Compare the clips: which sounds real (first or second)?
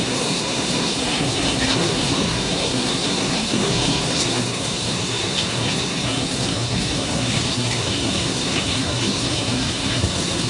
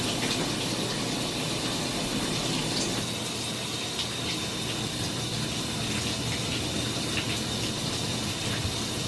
second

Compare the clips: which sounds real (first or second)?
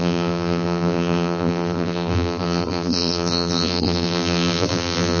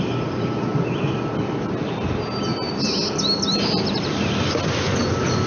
second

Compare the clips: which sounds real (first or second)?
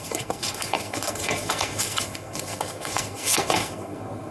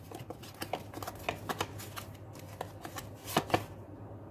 second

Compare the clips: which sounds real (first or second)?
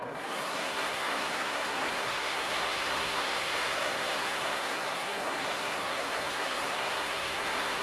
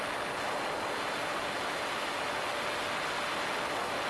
second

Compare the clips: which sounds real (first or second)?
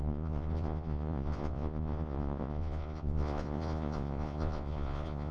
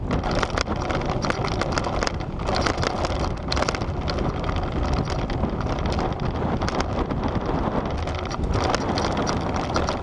second